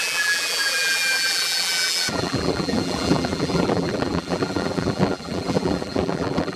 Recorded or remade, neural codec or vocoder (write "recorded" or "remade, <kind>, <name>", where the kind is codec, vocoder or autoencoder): remade, vocoder, BigVGAN v2